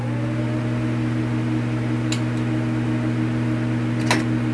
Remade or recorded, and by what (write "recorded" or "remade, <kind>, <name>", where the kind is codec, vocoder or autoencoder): recorded